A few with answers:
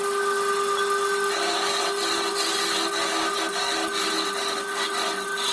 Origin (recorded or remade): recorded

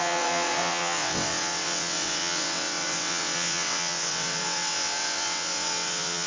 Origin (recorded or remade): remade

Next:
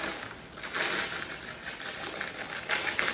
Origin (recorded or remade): recorded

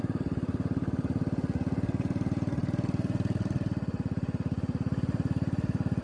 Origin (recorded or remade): recorded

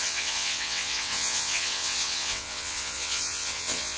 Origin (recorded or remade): remade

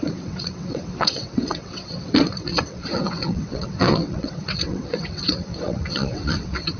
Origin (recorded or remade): remade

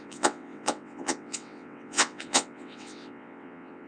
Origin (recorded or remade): remade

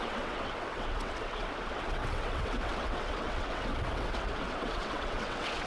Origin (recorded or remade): remade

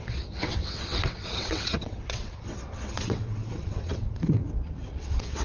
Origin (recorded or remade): remade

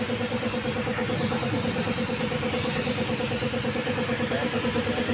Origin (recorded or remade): recorded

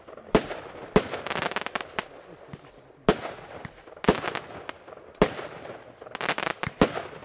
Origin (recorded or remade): recorded